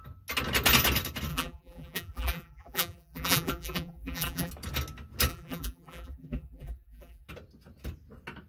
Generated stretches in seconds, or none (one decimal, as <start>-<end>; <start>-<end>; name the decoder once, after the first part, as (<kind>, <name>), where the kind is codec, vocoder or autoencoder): 1.3-4.5 (vocoder, BigVGAN v2); 5.3-7.3